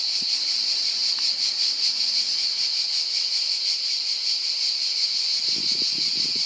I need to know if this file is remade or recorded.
recorded